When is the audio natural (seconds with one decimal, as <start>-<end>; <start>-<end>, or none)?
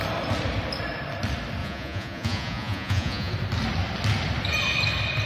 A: 0.0-1.6; 3.3-5.3